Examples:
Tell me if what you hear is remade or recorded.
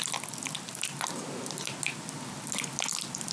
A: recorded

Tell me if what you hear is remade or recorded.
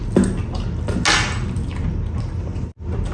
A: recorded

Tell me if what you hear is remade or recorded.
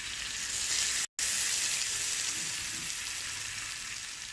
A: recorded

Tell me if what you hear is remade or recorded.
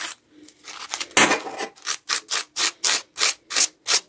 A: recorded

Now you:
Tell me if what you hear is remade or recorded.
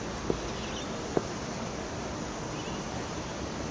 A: recorded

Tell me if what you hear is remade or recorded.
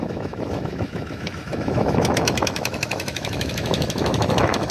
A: remade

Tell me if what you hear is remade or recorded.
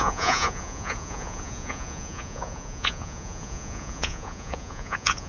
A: remade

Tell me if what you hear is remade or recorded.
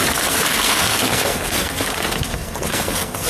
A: remade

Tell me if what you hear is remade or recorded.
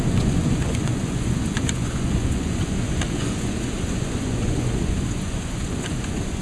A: remade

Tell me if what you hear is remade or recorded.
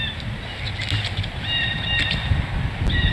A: recorded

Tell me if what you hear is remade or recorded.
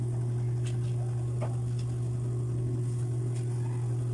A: recorded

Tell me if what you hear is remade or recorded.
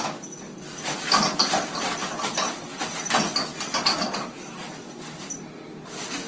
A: recorded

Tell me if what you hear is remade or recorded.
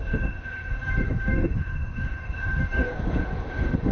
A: remade